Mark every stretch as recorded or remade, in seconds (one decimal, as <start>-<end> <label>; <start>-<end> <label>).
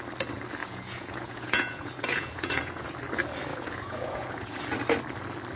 0.0-0.6 recorded; 0.6-2.9 remade; 2.9-3.5 recorded; 3.5-4.6 remade; 4.6-5.6 recorded